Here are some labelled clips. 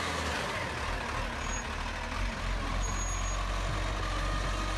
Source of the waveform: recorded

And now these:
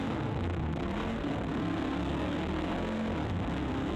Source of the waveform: remade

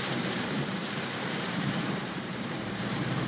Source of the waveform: remade